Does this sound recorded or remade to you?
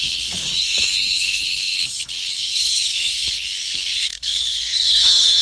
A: remade